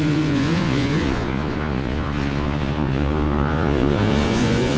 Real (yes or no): no